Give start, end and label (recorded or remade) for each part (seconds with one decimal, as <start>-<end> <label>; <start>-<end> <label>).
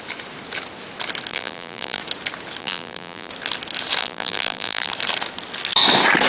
0.0-1.3 recorded; 1.3-2.0 remade; 2.0-2.6 recorded; 2.6-3.3 remade; 3.3-4.0 recorded; 4.0-4.9 remade; 4.9-6.3 recorded